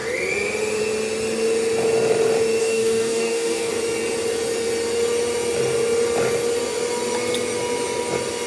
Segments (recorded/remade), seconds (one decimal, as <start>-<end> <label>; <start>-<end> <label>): 0.0-2.6 recorded; 2.6-3.7 remade; 3.7-8.5 recorded

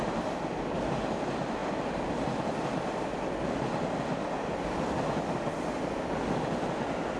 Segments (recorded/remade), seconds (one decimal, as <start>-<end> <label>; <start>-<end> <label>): 0.0-7.2 recorded

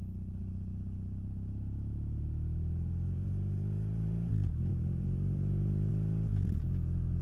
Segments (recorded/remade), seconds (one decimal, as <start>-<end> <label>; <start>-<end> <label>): 0.0-0.4 recorded; 0.4-4.3 remade; 4.3-4.7 recorded; 4.7-5.9 remade; 5.9-7.2 recorded

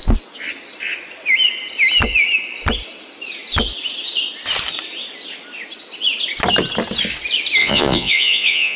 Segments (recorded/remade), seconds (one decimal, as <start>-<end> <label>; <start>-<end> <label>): 0.0-7.6 recorded; 7.6-8.8 remade

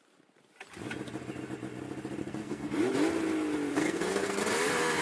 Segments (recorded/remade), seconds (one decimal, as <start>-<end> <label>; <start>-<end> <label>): 0.0-2.2 recorded; 2.2-2.7 remade; 2.7-3.7 recorded; 3.7-4.4 remade; 4.4-5.0 recorded

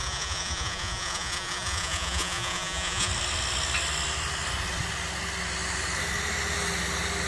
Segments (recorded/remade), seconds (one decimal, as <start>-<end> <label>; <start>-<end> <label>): 0.0-3.1 remade; 3.1-7.3 recorded

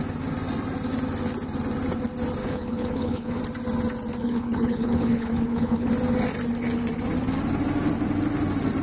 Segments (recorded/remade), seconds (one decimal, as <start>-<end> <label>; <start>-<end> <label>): 0.0-2.4 recorded; 2.4-3.4 remade; 3.4-4.2 recorded; 4.2-5.9 remade; 5.9-8.8 recorded

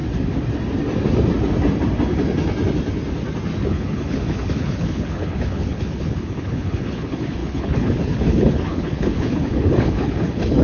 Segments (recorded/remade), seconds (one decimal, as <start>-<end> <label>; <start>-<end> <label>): 0.0-3.7 recorded; 3.7-10.6 remade